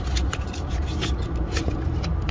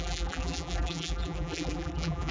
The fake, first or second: second